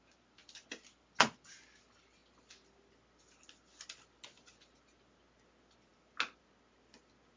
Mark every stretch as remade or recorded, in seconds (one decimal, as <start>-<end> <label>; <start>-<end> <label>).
0.0-7.4 recorded

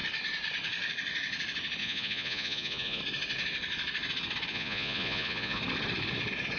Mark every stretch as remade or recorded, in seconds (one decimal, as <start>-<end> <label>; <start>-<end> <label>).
0.0-1.8 recorded; 1.8-3.0 remade; 3.0-4.5 recorded; 4.5-5.6 remade; 5.6-6.6 recorded

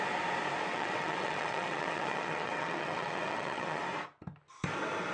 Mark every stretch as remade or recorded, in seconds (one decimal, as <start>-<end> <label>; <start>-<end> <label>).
0.0-0.7 recorded; 0.7-3.8 remade; 3.8-5.1 recorded